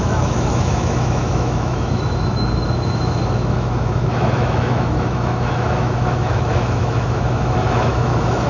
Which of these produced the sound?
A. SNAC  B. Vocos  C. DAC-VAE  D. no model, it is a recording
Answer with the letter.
C